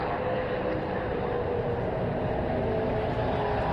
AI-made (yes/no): no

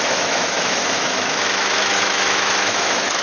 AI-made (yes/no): yes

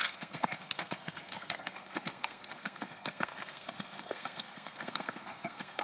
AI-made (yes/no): yes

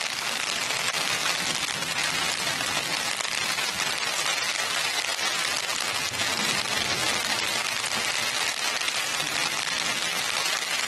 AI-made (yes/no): no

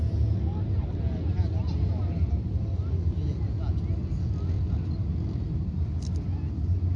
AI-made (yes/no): no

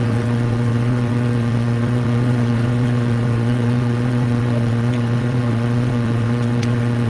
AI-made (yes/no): yes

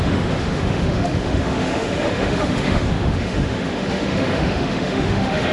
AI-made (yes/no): yes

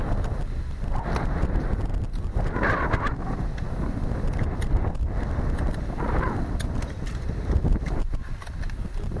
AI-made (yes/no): no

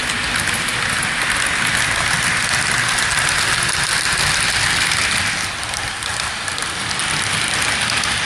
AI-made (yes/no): no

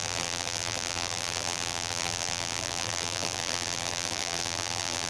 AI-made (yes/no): yes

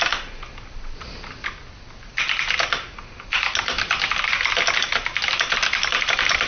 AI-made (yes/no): no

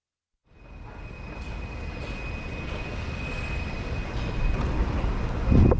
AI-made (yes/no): no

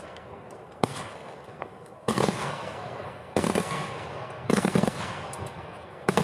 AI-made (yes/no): yes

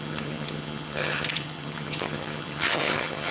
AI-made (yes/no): yes